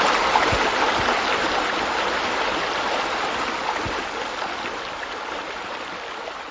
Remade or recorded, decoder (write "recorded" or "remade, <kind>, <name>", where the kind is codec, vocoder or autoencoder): recorded